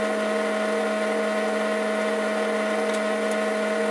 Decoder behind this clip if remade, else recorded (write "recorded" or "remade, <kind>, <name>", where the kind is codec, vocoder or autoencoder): recorded